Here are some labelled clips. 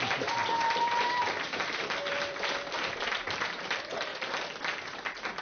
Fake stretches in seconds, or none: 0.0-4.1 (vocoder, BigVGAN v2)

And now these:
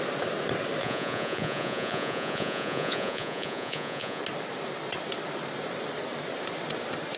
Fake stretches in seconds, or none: 0.8-4.2 (vocoder, Vocos)